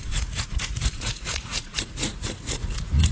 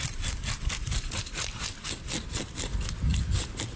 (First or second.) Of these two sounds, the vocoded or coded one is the first